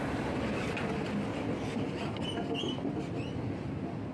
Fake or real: real